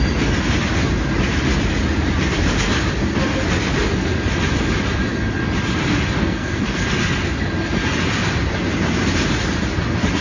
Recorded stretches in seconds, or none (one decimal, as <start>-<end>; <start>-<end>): 0.0-6.2; 6.8-10.2